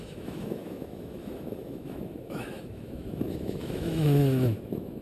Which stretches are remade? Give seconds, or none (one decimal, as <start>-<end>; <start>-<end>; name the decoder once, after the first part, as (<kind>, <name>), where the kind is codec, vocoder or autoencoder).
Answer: 0.0-5.0 (autoencoder, DAC-VAE)